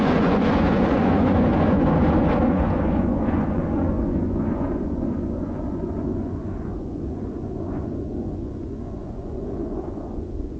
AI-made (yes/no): yes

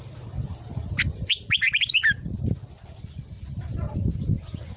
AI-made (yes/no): no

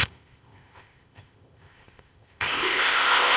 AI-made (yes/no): yes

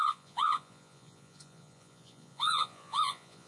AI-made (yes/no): yes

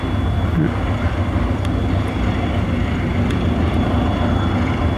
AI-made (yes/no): no